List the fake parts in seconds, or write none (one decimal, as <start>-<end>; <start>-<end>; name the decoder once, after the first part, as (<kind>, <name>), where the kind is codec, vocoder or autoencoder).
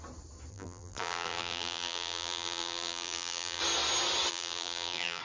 0.5-3.6 (vocoder, BigVGAN v2); 4.3-5.2